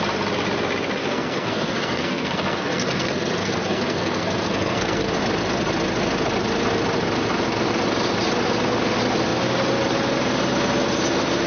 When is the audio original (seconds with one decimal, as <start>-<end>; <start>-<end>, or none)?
0.0-1.0; 5.1-11.5